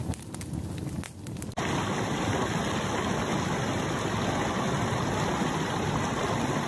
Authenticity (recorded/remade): recorded